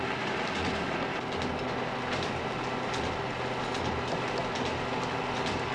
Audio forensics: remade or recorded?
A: recorded